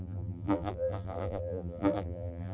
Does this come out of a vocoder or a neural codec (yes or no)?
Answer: yes